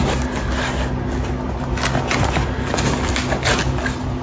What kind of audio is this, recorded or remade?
recorded